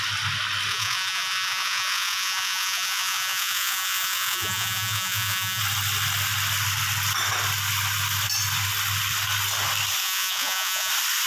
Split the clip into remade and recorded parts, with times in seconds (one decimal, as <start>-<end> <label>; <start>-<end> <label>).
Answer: 0.0-0.7 recorded; 0.7-5.6 remade; 5.6-10.0 recorded; 10.0-10.9 remade; 10.9-11.3 recorded